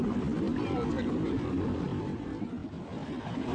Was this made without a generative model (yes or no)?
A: yes